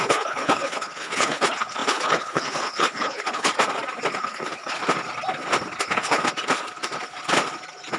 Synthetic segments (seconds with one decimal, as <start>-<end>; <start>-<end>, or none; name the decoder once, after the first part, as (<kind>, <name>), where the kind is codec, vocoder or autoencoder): 0.0-3.5 (codec, HILCodec); 4.1-4.8; 5.8-6.2